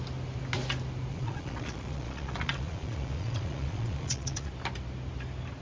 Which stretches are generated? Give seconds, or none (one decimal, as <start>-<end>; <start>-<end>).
1.1-4.5